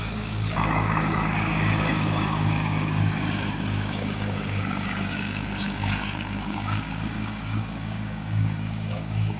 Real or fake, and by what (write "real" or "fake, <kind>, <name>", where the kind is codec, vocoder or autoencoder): fake, codec, DAC